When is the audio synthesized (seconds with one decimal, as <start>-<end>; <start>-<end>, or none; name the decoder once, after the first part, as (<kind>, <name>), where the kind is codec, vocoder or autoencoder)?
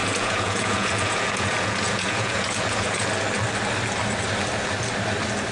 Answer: 0.0-3.1 (vocoder, Vocos)